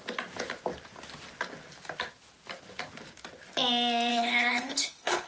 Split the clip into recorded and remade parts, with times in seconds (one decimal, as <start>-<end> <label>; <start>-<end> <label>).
0.0-4.1 recorded; 4.1-5.3 remade